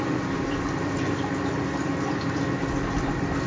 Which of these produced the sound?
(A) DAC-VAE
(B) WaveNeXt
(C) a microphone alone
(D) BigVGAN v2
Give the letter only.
C